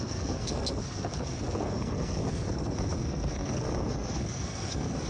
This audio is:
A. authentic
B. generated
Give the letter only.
B